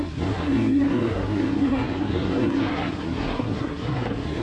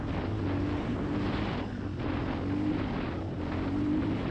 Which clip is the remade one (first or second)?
first